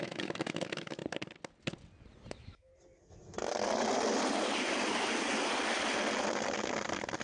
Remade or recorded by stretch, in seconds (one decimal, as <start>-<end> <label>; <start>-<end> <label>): 0.0-1.0 remade; 1.0-2.3 recorded; 2.3-2.7 remade; 2.7-7.2 recorded